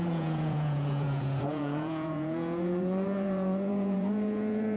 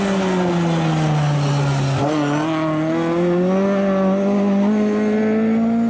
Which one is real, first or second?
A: second